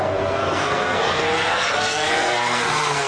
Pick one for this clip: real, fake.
fake